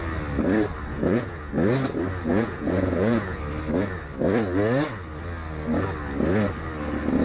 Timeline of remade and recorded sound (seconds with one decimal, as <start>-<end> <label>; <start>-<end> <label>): 0.0-0.9 recorded; 0.9-1.5 remade; 1.5-2.3 recorded; 2.3-3.4 remade; 3.4-7.2 recorded